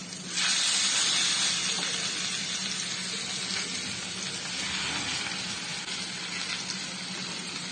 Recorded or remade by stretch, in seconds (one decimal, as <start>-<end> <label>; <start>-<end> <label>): 0.0-7.7 recorded